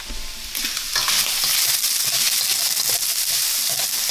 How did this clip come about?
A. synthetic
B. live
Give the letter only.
B